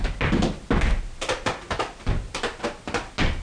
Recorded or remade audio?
recorded